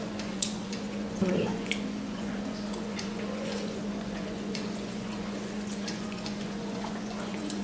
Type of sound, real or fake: fake